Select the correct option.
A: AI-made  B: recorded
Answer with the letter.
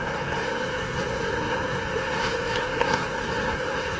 A